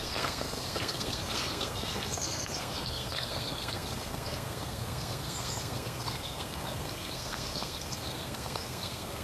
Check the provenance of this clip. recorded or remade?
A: remade